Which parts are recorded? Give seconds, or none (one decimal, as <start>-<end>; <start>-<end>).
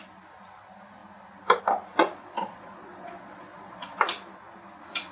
0.0-2.0; 4.0-5.1